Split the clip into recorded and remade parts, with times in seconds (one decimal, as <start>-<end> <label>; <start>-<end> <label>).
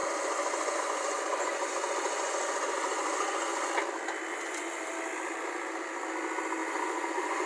0.0-3.7 remade; 3.7-4.3 recorded; 4.3-4.9 remade; 4.9-6.6 recorded; 6.6-7.5 remade